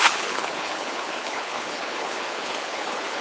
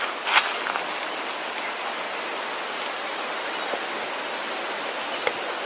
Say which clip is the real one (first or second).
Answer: second